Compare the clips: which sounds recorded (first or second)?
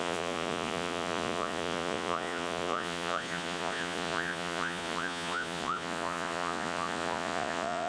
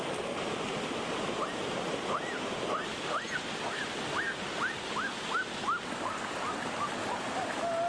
second